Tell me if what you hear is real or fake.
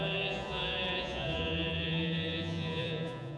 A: fake